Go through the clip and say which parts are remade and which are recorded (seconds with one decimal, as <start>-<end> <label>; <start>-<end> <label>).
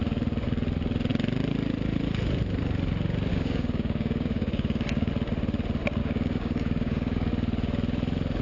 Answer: 0.0-3.3 recorded; 3.3-5.1 remade; 5.1-6.0 recorded; 6.0-7.3 remade; 7.3-8.4 recorded